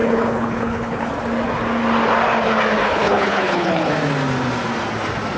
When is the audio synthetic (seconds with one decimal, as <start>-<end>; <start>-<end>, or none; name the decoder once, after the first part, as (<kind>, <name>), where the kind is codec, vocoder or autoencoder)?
0.0-1.1 (codec, HILCodec); 2.8-3.9

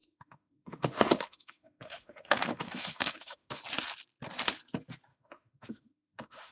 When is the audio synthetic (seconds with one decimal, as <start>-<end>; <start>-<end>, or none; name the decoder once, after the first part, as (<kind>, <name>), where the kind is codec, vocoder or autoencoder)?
0.0-3.6 (autoencoder, DAC-VAE); 5.1-6.5

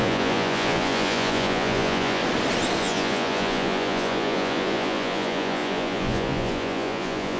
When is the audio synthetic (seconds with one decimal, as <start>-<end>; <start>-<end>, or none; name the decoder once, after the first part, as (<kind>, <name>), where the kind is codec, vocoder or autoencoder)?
0.0-2.2 (vocoder, Vocos); 2.8-7.4